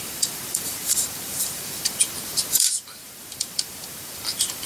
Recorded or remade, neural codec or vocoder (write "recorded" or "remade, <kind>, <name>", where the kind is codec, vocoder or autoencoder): remade, vocoder, BigVGAN v2